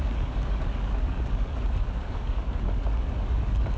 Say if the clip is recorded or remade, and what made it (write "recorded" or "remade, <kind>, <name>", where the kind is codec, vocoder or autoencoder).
remade, codec, DAC